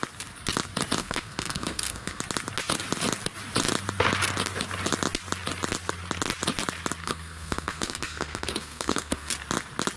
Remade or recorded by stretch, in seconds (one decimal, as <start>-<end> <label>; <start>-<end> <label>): 0.0-1.0 recorded; 1.0-2.2 remade; 2.2-7.0 recorded; 7.0-9.3 remade; 9.3-10.0 recorded